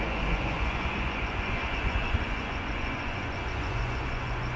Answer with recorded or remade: remade